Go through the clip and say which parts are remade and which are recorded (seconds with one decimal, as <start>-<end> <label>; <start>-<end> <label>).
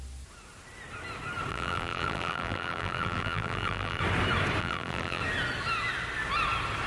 0.0-1.5 recorded; 1.5-4.0 remade; 4.0-4.6 recorded; 4.6-5.2 remade; 5.2-6.9 recorded